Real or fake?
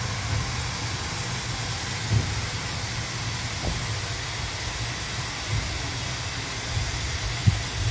real